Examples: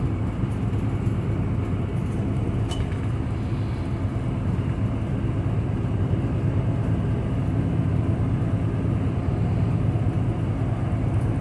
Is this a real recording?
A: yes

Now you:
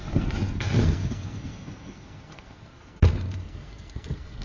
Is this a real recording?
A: no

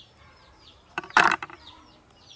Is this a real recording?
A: no